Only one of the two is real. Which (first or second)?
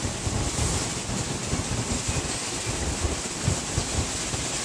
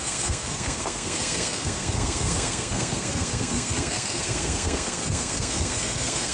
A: first